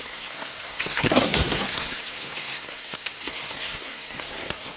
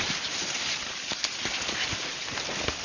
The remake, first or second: first